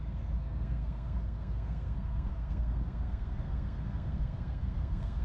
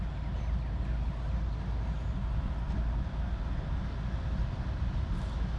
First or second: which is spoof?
first